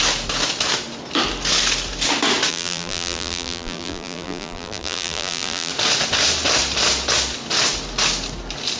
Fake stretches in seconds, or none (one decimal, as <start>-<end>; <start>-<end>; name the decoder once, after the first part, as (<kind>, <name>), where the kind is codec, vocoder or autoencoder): 2.5-5.7 (vocoder, BigVGAN v2)